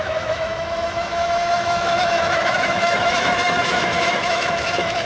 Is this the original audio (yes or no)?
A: no